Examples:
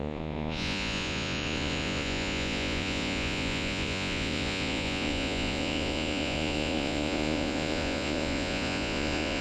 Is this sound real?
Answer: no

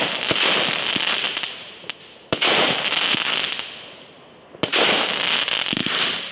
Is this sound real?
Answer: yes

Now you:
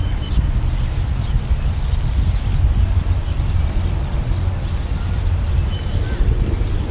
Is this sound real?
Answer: yes